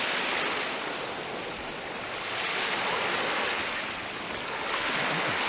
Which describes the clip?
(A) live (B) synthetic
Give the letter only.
A